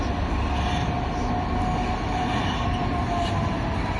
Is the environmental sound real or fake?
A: real